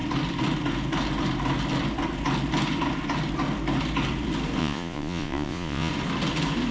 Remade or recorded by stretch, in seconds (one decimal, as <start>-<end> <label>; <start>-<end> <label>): 0.0-4.6 recorded; 4.6-5.9 remade; 5.9-6.7 recorded